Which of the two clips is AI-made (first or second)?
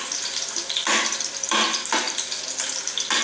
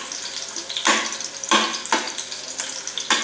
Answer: first